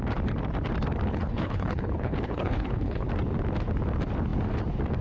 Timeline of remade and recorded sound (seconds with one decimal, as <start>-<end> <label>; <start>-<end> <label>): 0.0-1.1 recorded; 1.1-3.1 remade; 3.1-5.0 recorded